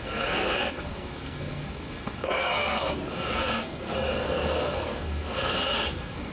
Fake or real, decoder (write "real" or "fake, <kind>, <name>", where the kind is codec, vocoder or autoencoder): fake, codec, SNAC